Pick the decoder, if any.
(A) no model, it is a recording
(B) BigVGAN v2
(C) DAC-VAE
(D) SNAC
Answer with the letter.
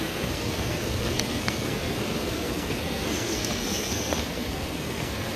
D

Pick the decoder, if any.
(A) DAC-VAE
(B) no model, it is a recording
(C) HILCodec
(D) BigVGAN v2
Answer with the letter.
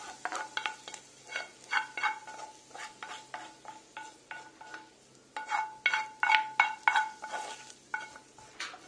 B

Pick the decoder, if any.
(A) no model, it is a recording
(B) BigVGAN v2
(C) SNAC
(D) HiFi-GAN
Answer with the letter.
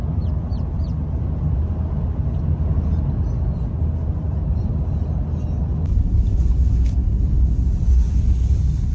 A